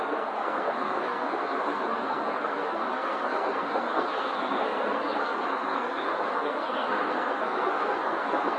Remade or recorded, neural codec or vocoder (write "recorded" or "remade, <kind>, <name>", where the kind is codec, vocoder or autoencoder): remade, codec, SNAC